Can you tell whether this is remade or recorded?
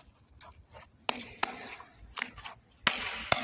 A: recorded